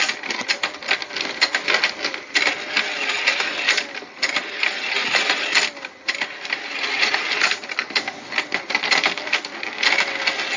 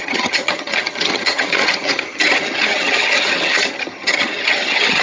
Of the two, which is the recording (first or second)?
first